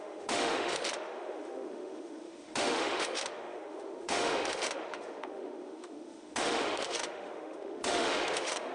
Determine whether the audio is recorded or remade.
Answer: remade